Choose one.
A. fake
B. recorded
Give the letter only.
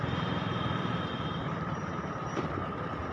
A